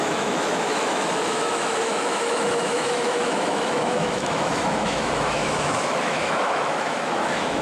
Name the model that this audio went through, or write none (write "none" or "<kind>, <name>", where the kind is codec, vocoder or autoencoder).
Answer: autoencoder, DAC-VAE